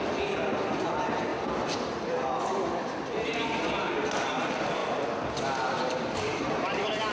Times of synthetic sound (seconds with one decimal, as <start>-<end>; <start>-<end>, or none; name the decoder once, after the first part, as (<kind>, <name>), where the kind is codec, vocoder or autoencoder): 1.3-2.3 (vocoder, BigVGAN v2); 4.8-6.1